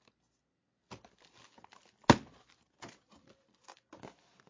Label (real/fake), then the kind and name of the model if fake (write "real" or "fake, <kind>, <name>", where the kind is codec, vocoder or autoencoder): real